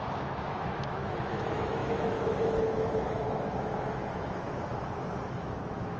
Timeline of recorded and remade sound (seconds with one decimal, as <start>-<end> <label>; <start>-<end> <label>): 0.0-6.0 remade